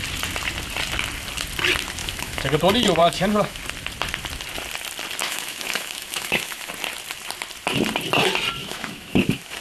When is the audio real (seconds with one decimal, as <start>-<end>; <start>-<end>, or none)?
0.0-2.0; 2.6-3.0; 3.6-5.2; 6.7-8.6

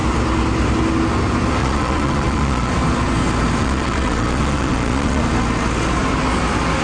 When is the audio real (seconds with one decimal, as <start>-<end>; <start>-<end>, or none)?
0.0-1.6; 2.7-3.6; 5.2-6.8

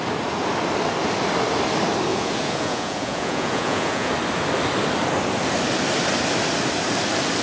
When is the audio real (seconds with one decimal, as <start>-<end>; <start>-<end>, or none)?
0.0-2.1; 4.1-7.4

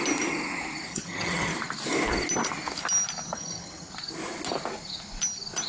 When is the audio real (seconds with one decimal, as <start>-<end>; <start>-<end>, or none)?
0.0-0.9; 1.5-3.3; 3.9-5.7

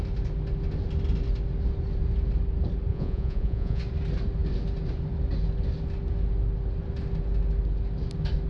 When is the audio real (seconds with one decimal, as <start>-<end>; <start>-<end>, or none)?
0.0-2.9; 3.8-8.5